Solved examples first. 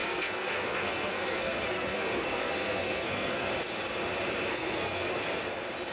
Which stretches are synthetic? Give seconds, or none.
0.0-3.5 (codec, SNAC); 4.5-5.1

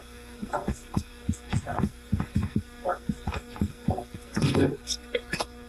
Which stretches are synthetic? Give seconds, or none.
0.0-5.7 (codec, SNAC)

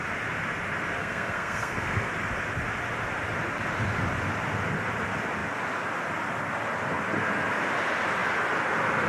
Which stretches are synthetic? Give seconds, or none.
1.0-2.1 (codec, SNAC)

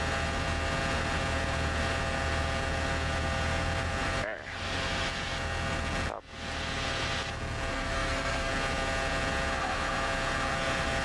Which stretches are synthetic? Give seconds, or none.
7.7-8.5 (codec, SNAC)

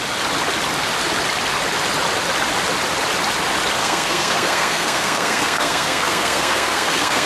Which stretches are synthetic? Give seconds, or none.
3.8-7.3 (codec, SNAC)

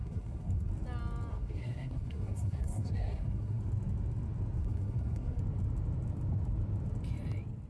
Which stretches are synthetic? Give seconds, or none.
0.0-0.7 (codec, SNAC); 1.3-3.6; 4.6-5.4